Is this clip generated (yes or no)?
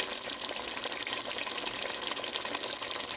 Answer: no